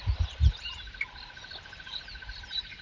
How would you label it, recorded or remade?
recorded